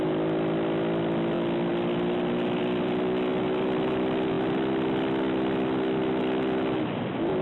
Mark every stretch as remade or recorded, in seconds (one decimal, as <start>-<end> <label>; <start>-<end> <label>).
0.0-7.4 recorded